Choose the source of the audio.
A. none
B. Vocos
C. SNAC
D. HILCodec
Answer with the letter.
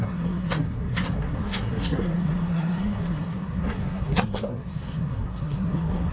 C